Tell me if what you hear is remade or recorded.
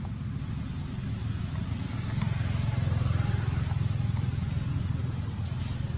recorded